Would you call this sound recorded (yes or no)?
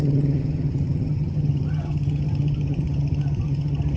no